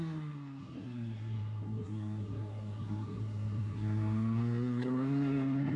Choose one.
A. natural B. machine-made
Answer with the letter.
B